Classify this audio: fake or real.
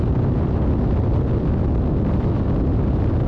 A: real